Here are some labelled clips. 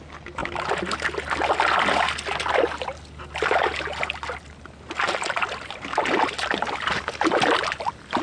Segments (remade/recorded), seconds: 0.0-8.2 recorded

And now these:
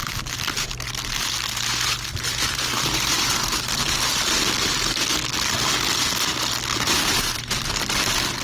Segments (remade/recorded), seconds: 0.0-3.6 remade; 3.6-6.7 recorded; 6.7-7.8 remade; 7.8-8.4 recorded

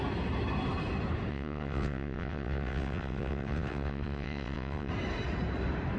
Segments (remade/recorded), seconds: 0.0-1.3 recorded; 1.3-4.9 remade; 4.9-6.0 recorded

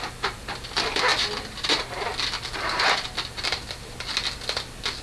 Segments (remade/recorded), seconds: 0.0-5.0 recorded